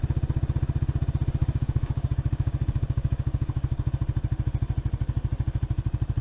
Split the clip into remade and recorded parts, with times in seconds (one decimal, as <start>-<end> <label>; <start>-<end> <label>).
0.0-1.4 recorded; 1.4-3.9 remade; 3.9-6.2 recorded